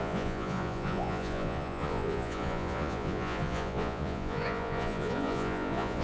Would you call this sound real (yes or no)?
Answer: no